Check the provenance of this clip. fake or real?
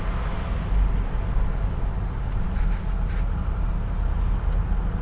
real